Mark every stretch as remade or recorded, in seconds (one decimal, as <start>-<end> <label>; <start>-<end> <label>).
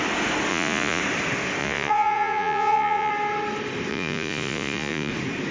0.0-0.5 recorded; 0.5-1.0 remade; 1.0-1.6 recorded; 1.6-3.1 remade; 3.1-3.9 recorded; 3.9-5.1 remade; 5.1-5.5 recorded